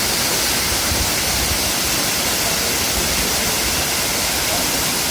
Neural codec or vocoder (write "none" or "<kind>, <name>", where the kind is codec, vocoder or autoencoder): none